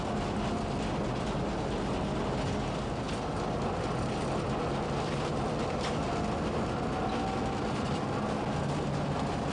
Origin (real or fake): real